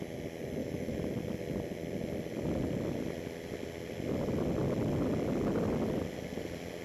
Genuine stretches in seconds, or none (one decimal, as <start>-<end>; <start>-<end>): 0.0-0.6; 1.1-6.8